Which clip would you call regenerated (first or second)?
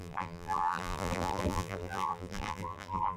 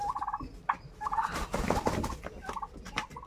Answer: first